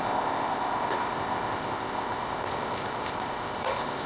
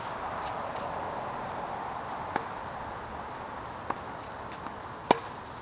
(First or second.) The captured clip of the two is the second